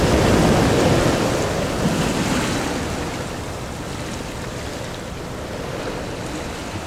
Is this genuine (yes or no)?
yes